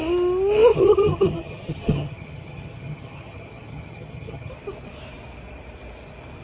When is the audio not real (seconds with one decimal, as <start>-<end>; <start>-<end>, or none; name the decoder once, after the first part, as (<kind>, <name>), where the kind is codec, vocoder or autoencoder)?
0.7-4.5 (vocoder, HiFi-GAN)